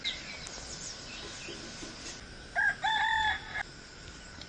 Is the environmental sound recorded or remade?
recorded